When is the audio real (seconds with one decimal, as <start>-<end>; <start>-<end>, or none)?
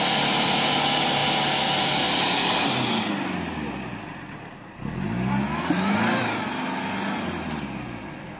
0.0-8.4